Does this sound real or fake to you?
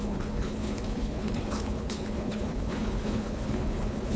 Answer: fake